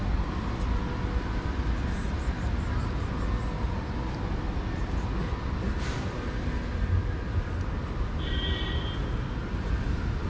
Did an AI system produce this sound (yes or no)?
no